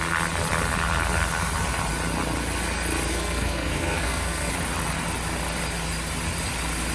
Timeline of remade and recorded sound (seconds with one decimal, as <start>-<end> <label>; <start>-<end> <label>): 0.0-3.1 recorded; 3.1-4.5 remade; 4.5-6.9 recorded